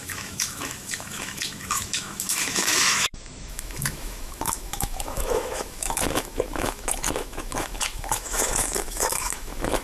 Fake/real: fake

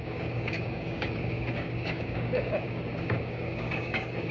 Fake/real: fake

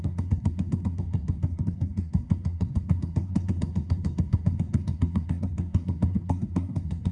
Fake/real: fake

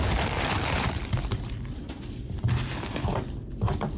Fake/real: real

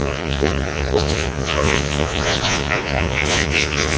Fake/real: fake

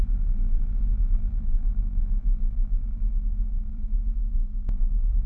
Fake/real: fake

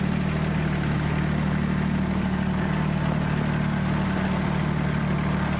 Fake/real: real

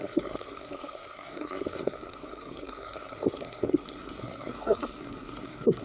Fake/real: fake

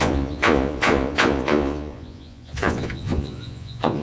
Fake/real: fake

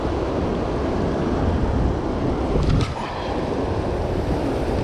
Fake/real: real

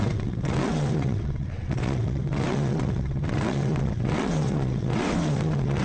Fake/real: fake